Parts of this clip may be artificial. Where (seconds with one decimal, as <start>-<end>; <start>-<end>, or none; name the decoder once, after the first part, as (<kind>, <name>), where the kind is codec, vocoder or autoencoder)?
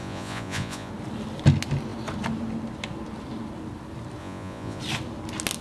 0.0-0.9 (vocoder, Vocos); 4.2-4.8